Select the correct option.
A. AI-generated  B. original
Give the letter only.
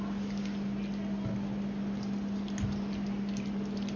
B